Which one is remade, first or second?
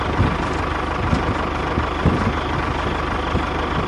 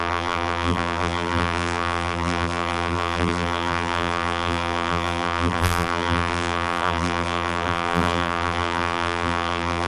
second